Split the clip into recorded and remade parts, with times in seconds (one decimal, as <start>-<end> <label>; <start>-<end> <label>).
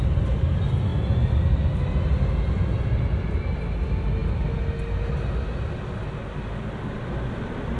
0.0-7.8 recorded